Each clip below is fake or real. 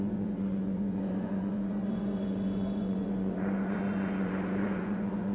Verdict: fake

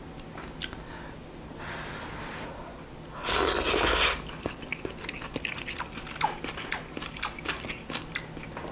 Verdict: real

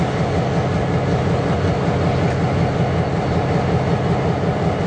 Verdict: real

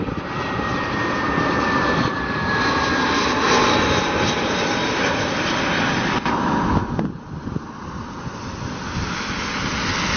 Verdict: real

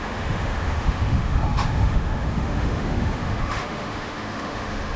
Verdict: fake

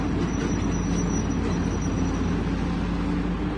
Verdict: real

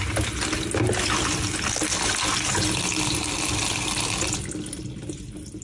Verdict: real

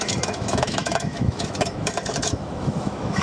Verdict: fake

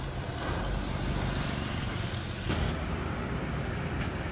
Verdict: real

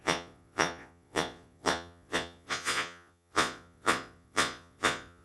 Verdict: fake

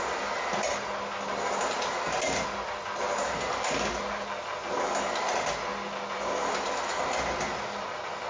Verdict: real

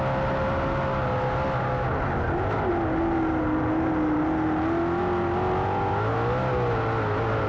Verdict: real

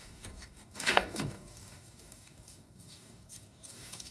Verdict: fake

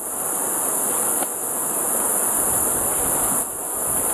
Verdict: real